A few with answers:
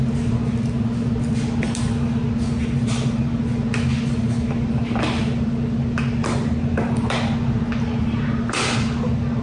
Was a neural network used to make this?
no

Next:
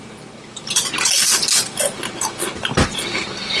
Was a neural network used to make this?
no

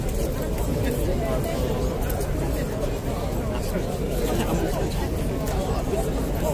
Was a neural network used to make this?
no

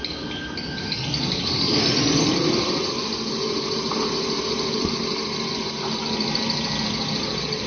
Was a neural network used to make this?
no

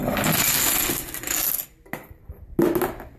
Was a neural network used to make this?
no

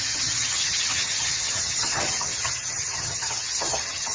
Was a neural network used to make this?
yes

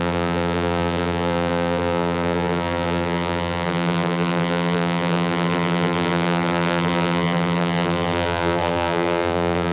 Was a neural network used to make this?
yes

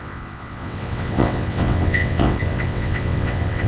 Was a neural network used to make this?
yes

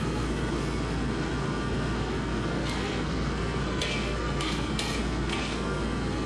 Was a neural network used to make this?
yes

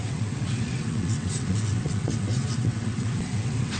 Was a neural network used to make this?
yes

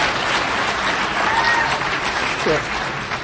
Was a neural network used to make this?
no